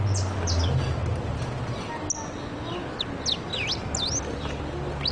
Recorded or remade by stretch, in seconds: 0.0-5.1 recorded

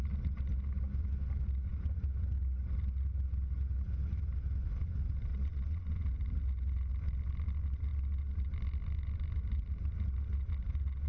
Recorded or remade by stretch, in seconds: 0.0-5.3 recorded; 5.3-6.0 remade; 6.0-11.1 recorded

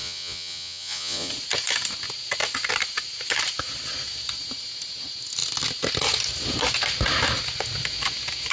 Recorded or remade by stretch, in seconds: 0.0-1.3 remade; 1.3-8.5 recorded

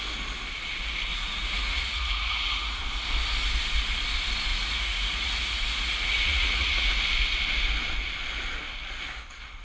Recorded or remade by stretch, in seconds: 0.0-1.1 recorded; 1.1-2.8 remade; 2.8-4.5 recorded; 4.5-6.9 remade; 6.9-9.6 recorded

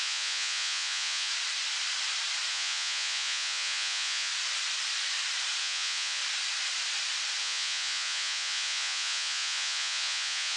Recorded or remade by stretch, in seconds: 0.0-1.3 remade; 1.3-2.5 recorded; 2.5-4.3 remade; 4.3-5.6 recorded; 5.6-6.2 remade; 6.2-7.4 recorded; 7.4-10.6 remade